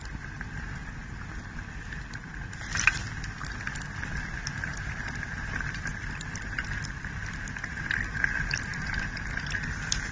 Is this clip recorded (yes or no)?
yes